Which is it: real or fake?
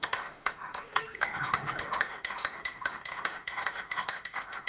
fake